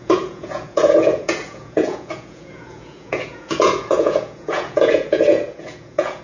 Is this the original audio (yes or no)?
no